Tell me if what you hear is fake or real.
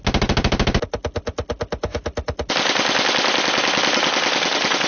real